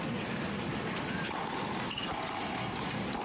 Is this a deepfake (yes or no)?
no